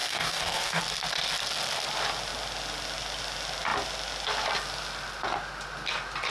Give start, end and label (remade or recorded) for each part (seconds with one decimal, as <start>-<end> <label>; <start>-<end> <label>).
0.0-0.8 remade; 0.8-6.3 recorded